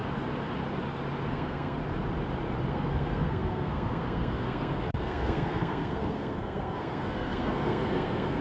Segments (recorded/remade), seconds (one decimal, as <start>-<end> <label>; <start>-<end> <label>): 0.0-1.3 recorded; 1.3-1.8 remade; 1.8-2.7 recorded; 2.7-8.4 remade